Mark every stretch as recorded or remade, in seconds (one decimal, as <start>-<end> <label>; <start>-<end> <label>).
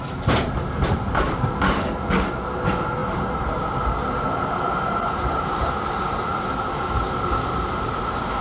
0.0-3.0 recorded; 3.0-4.1 remade; 4.1-8.4 recorded